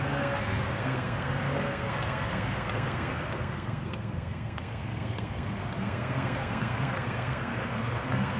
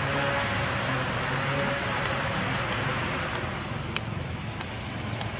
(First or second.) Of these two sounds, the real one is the second